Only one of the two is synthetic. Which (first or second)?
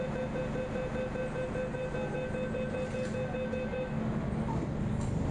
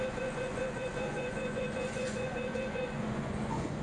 second